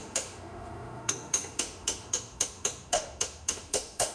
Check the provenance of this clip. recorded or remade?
remade